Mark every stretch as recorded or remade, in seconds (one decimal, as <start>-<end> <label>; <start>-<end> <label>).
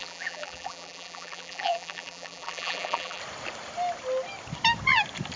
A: 0.0-3.2 remade; 3.2-5.4 recorded